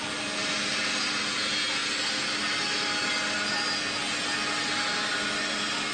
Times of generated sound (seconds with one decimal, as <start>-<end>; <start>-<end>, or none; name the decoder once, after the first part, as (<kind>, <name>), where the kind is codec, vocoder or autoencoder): 0.4-1.0 (vocoder, BigVGAN v2)